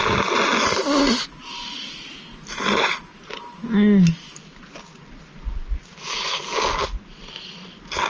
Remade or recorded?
recorded